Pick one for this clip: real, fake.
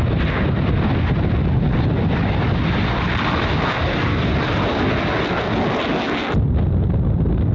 real